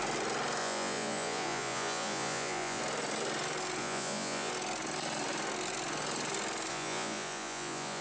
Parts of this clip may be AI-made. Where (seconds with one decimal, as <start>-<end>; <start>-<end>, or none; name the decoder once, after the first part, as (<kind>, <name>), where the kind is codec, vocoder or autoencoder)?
0.6-2.8 (vocoder, Vocos); 3.8-4.5; 6.7-8.0